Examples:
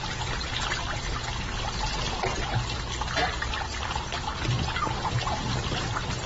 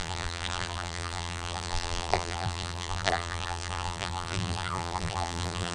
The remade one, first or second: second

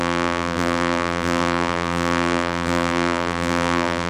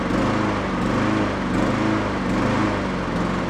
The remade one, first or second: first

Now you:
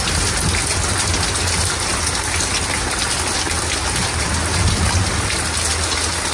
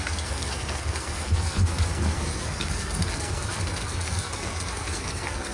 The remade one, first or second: second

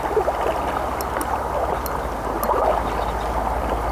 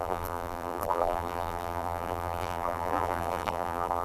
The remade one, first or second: second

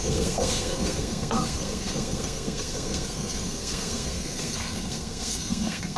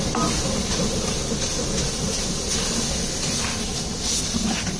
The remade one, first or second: first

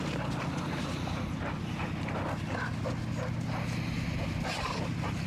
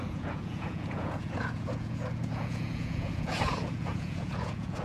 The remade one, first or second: second